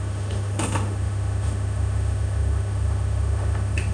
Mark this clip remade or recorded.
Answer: remade